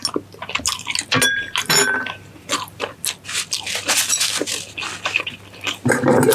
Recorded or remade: recorded